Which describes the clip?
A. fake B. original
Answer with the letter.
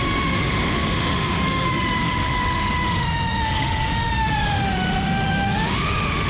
A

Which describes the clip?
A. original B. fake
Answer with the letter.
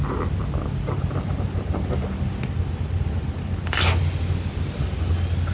A